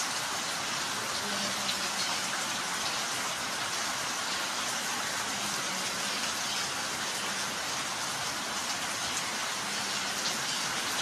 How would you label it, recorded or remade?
recorded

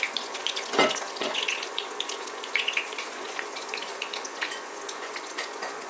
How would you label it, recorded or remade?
remade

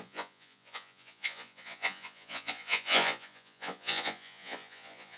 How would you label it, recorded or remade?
remade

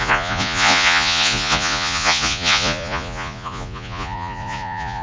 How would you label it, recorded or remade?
remade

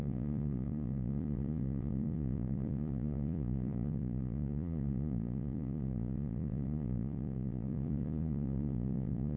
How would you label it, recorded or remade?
remade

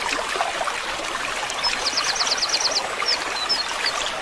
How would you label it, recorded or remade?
recorded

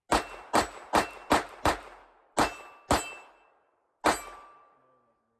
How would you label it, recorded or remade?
recorded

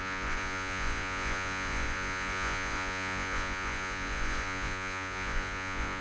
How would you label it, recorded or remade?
remade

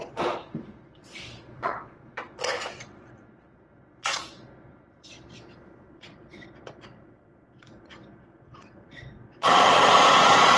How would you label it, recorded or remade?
remade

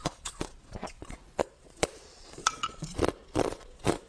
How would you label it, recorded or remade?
remade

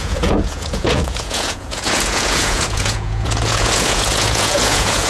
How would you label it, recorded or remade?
remade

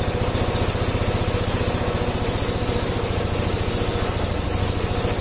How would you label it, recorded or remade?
recorded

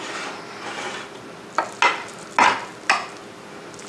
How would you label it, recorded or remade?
recorded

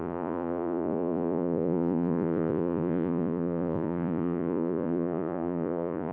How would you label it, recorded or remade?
remade